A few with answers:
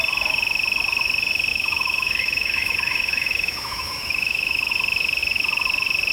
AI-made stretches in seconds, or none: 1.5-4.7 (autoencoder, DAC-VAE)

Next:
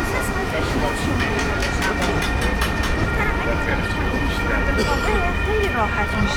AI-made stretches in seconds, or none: 0.4-1.1 (autoencoder, DAC-VAE)

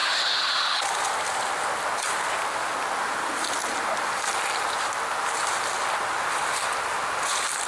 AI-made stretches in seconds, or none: 0.0-0.8 (autoencoder, DAC-VAE)

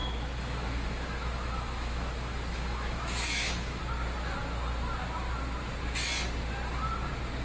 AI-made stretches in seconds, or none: 0.0-3.8 (autoencoder, DAC-VAE)

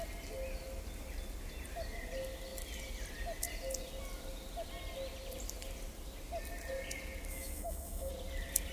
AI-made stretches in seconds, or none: 7.3-8.1 (autoencoder, DAC-VAE)

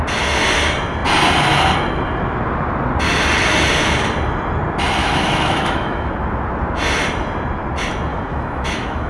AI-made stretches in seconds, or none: 5.0-6.1 (autoencoder, DAC-VAE); 8.1-9.1

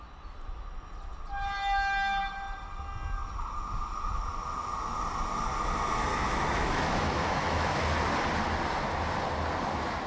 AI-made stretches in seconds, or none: 6.1-7.8 (autoencoder, DAC-VAE)